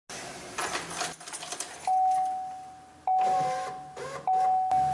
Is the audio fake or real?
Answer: real